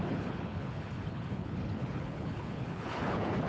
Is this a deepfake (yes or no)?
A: yes